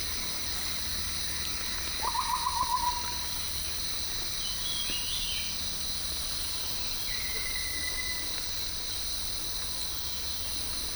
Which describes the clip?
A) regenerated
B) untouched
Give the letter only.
B